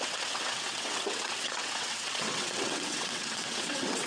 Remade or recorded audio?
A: remade